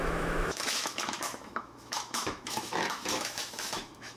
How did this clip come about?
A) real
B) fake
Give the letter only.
B